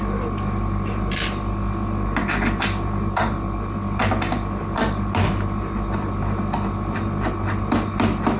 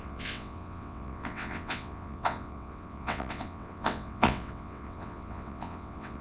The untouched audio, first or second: first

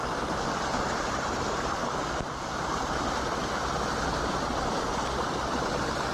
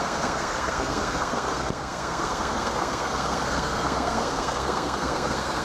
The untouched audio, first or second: first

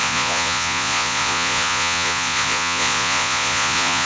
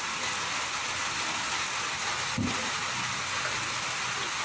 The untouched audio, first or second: second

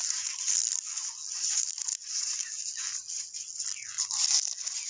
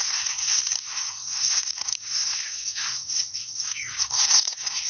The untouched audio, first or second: first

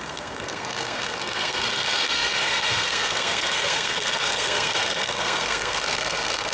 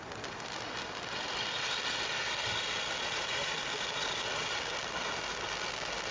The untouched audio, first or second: second